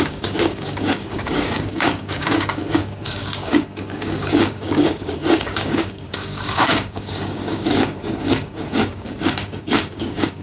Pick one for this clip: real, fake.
fake